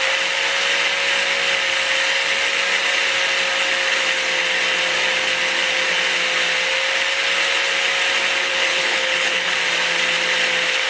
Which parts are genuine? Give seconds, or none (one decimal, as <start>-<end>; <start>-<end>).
0.0-8.4; 9.5-10.9